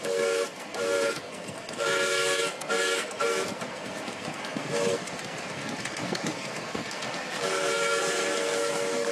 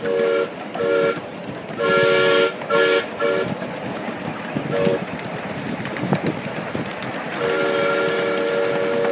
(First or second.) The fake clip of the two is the first